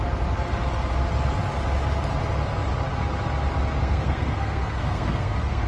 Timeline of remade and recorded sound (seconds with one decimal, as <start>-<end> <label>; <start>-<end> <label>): 0.0-3.8 recorded; 3.8-5.7 remade